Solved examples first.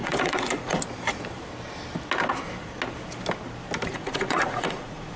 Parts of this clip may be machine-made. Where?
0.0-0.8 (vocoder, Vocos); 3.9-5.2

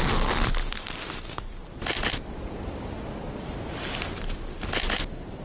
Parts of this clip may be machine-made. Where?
0.0-2.9 (vocoder, BigVGAN v2)

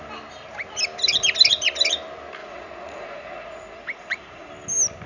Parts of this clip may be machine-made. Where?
2.4-4.5 (vocoder, Vocos)

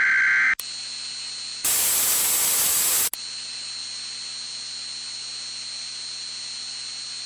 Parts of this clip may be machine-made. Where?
none

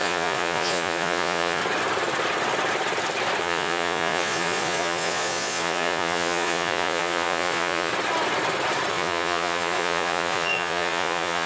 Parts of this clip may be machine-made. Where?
0.0-1.6 (vocoder, Vocos); 3.4-7.9; 8.9-11.5

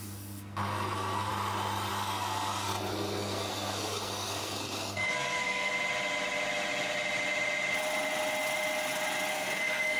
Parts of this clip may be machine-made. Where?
0.0-1.3 (codec, SNAC); 1.9-5.7; 9.3-10.0

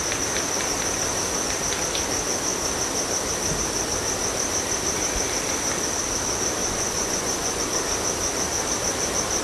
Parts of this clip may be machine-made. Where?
6.6-7.6 (vocoder, Vocos)

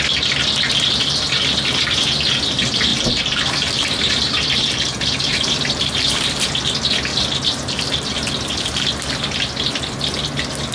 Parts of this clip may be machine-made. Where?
2.9-6.5 (vocoder, BigVGAN v2); 7.1-8.3